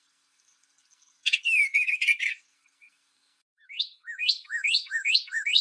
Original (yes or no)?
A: no